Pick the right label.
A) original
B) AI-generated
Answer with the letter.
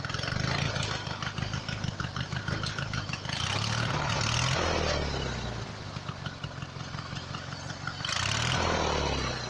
A